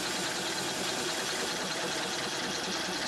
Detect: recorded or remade recorded